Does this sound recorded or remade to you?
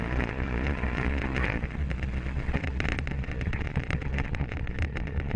remade